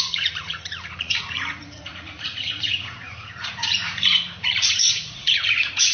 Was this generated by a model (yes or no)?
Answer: yes